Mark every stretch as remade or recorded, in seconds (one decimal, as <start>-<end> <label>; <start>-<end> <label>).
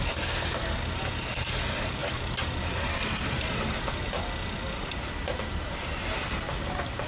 0.0-7.1 recorded